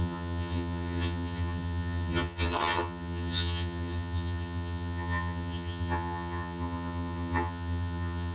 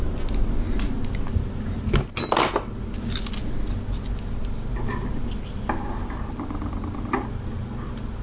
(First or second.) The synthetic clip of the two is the first